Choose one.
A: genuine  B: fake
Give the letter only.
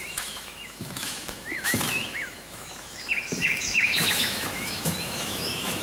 B